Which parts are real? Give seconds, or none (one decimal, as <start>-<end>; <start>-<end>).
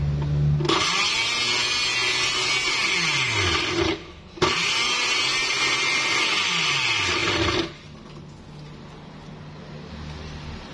0.0-10.7